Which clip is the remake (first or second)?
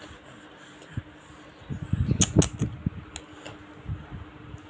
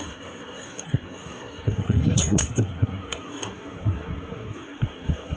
second